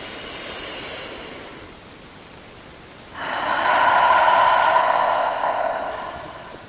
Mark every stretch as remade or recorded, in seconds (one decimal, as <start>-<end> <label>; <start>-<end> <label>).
0.0-4.8 recorded; 4.8-5.9 remade; 5.9-6.7 recorded